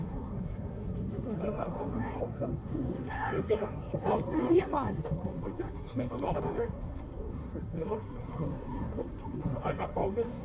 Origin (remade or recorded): remade